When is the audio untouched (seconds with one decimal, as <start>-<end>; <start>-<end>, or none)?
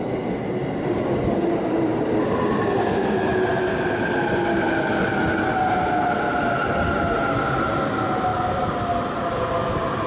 0.0-10.1